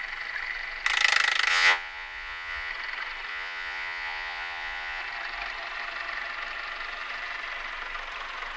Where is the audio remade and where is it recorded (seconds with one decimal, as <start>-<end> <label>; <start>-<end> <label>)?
0.0-1.5 recorded; 1.5-2.7 remade; 2.7-3.3 recorded; 3.3-5.0 remade; 5.0-8.6 recorded